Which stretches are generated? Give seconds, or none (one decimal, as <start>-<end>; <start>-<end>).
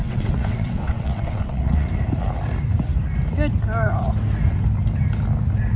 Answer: 0.0-1.9